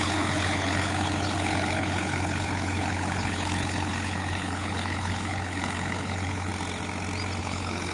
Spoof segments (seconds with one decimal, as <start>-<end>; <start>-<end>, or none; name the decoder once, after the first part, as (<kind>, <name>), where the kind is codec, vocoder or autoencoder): 0.0-6.5 (codec, HILCodec); 7.4-7.9